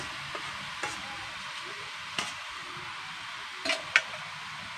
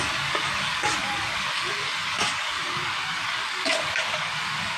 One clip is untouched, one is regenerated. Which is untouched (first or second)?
first